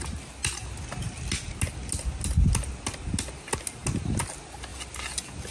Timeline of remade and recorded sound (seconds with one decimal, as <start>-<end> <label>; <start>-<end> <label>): 0.0-5.5 recorded